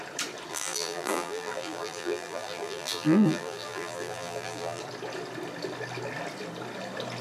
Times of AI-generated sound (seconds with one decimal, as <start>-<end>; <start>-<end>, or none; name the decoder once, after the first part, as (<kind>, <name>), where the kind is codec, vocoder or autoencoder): 0.5-4.8 (vocoder, BigVGAN v2)